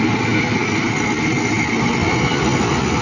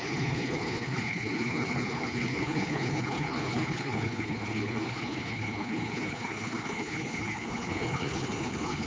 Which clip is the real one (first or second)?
first